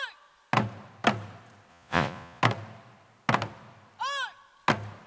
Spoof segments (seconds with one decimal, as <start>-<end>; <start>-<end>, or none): 1.7-2.4